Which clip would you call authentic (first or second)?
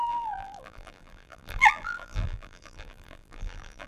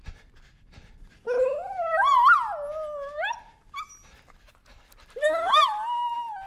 second